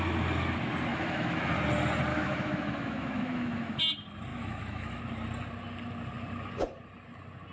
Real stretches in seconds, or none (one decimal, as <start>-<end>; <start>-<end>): 0.0-0.9; 1.5-2.1; 3.8-4.3; 5.0-7.5